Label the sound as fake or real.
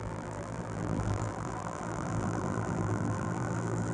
fake